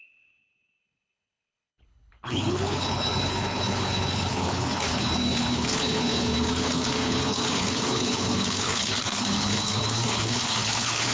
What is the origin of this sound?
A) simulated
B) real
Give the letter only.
A